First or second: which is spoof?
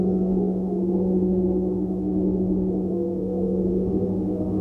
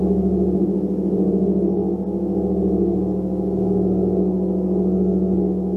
first